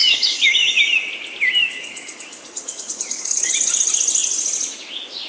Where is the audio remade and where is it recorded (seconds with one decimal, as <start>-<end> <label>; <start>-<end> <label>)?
0.0-0.7 remade; 0.7-1.6 recorded; 1.6-3.5 remade; 3.5-5.3 recorded